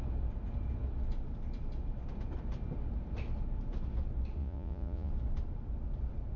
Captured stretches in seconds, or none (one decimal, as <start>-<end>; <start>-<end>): 0.0-4.4; 5.1-6.4